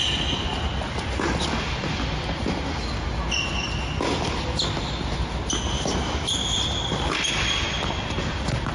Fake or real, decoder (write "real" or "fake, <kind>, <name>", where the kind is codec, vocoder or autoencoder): real